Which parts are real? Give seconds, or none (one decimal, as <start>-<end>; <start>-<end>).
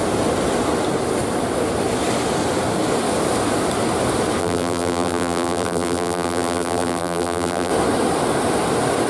0.0-4.4; 7.7-9.1